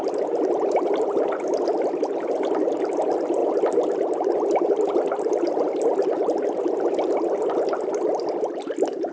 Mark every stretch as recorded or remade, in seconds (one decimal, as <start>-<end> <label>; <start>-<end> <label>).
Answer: 0.0-9.1 recorded